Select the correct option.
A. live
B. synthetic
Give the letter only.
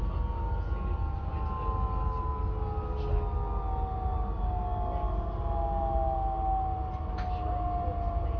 A